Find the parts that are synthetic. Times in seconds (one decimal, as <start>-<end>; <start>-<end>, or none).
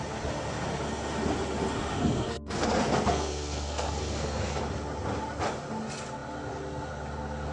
1.9-4.6